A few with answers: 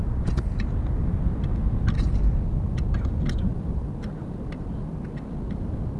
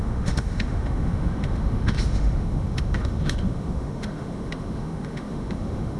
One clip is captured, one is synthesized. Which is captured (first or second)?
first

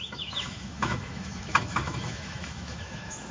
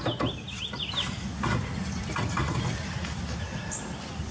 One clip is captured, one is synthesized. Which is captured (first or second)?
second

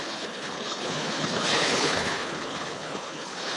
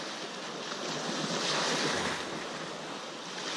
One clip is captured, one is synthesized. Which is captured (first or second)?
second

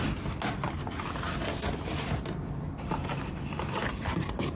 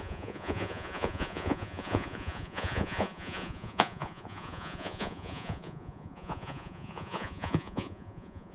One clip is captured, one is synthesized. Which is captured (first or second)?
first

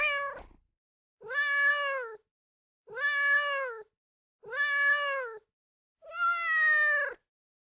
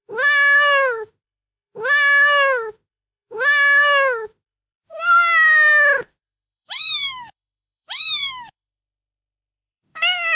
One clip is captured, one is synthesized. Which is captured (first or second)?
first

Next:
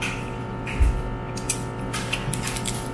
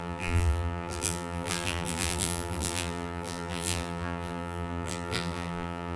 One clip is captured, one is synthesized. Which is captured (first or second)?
first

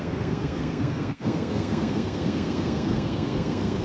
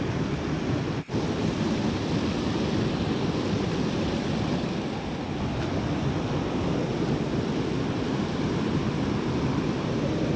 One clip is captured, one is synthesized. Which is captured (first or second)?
second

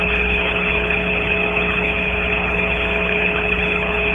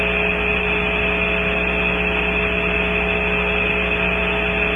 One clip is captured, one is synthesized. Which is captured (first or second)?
second